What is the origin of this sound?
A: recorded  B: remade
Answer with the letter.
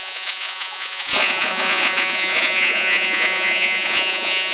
B